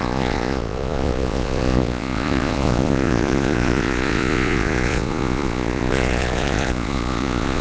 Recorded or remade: remade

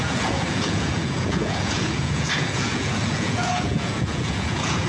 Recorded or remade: remade